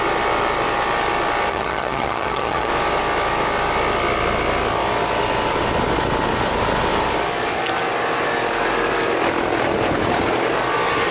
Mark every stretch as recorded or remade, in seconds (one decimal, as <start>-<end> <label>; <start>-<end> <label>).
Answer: 0.0-1.5 recorded; 1.5-2.7 remade; 2.7-11.1 recorded